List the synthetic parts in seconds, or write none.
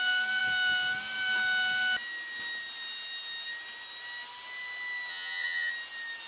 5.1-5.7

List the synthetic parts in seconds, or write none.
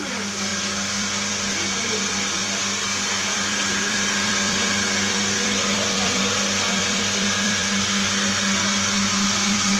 0.0-9.8